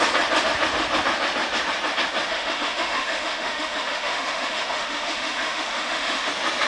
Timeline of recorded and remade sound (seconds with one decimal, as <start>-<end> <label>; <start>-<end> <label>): 0.0-2.3 recorded; 2.3-6.3 remade; 6.3-6.7 recorded